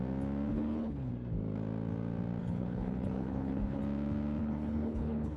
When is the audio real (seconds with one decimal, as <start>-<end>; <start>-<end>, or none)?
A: 0.0-0.5; 1.1-2.4; 3.8-4.4